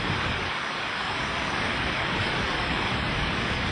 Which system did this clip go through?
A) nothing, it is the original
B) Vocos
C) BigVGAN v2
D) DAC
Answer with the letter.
D